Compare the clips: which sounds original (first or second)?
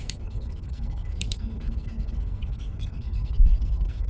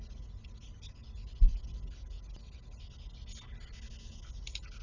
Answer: second